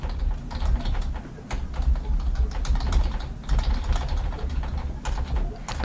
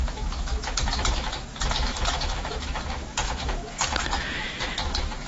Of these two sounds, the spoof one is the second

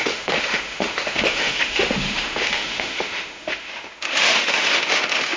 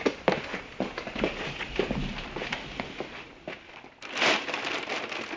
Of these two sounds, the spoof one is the first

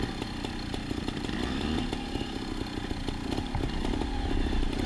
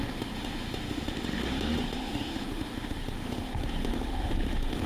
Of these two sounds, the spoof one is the second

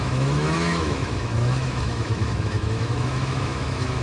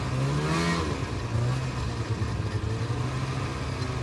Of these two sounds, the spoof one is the first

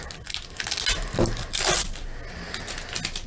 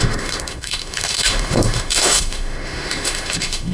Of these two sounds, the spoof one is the second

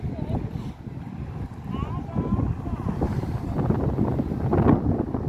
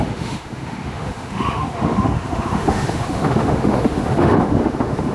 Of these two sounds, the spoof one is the second